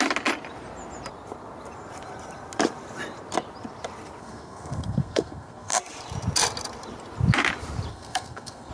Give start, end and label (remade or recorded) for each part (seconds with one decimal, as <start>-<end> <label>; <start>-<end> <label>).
0.0-4.2 recorded; 4.2-5.8 remade; 5.8-7.9 recorded; 7.9-8.7 remade